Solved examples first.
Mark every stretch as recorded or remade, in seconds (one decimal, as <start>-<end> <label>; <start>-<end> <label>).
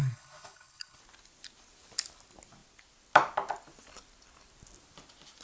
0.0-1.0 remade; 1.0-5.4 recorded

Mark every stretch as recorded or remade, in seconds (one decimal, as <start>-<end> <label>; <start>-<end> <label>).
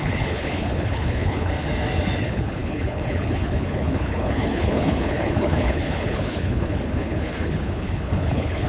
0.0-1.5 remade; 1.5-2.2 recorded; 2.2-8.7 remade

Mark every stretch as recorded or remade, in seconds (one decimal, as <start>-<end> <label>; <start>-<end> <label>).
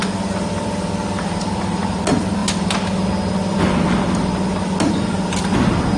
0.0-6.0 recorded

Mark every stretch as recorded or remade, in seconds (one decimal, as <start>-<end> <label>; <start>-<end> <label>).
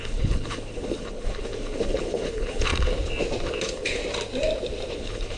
0.0-2.7 remade; 2.7-3.6 recorded; 3.6-4.0 remade; 4.0-4.9 recorded; 4.9-5.4 remade